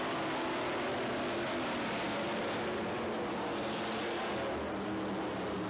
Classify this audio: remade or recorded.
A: recorded